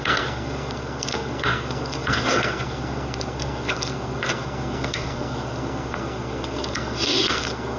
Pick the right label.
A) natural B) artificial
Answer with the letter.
B